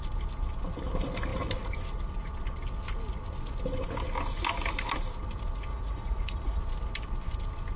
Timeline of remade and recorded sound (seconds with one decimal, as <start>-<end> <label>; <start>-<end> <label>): 0.0-5.7 recorded; 5.7-6.6 remade; 6.6-7.8 recorded